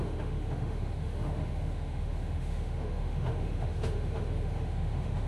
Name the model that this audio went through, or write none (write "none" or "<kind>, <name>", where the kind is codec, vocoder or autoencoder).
autoencoder, DAC-VAE